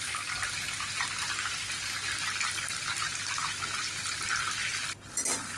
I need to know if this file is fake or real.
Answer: real